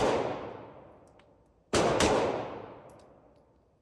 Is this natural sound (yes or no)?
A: yes